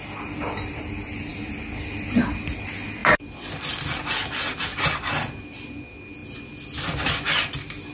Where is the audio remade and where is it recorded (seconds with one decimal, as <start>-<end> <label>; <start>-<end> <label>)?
0.0-7.9 recorded